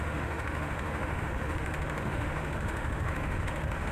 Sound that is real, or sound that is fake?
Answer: fake